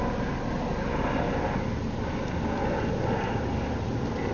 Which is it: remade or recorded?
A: recorded